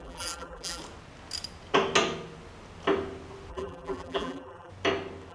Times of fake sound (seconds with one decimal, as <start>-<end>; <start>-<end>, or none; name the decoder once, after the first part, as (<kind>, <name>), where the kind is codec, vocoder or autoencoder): 0.0-0.8 (vocoder, BigVGAN v2); 3.5-4.7